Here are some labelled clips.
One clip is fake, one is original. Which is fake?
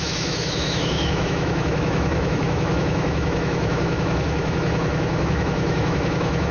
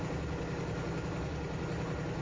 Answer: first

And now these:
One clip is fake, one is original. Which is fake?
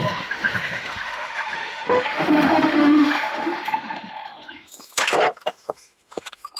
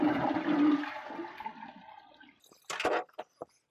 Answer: first